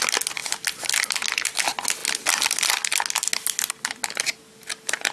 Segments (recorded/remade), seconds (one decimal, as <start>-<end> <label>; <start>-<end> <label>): 0.0-5.1 recorded

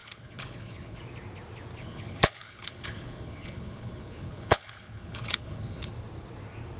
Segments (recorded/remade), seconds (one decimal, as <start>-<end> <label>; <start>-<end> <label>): 0.0-1.0 remade; 1.0-1.8 recorded; 1.8-5.9 remade; 5.9-6.8 recorded

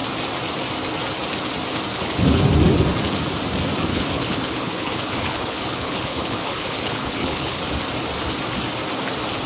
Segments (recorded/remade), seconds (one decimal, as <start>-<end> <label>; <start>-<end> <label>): 0.0-1.9 recorded; 1.9-2.5 remade; 2.5-3.9 recorded; 3.9-7.6 remade; 7.6-9.5 recorded

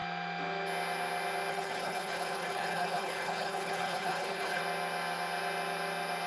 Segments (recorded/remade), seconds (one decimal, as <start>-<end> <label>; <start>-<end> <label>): 0.0-1.5 recorded; 1.5-4.6 remade; 4.6-6.3 recorded

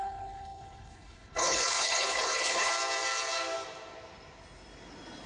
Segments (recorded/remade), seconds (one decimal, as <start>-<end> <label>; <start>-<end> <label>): 0.0-2.7 remade; 2.7-5.3 recorded

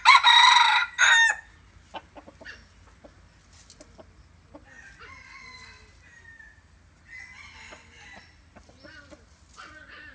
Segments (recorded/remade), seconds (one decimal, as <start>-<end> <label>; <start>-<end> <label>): 0.0-10.1 recorded